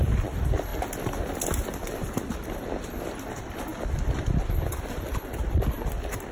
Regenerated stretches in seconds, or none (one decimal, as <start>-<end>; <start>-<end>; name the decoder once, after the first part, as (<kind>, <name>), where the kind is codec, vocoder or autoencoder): 0.0-0.7 (vocoder, BigVGAN v2); 2.5-6.3